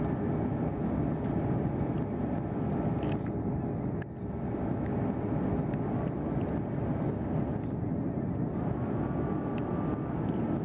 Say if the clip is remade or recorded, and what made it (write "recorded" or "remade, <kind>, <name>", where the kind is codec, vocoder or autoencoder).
recorded